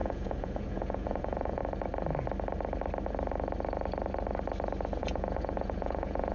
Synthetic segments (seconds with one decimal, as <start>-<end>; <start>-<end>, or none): 0.0-1.6; 5.0-6.3